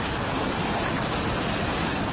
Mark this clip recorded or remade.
recorded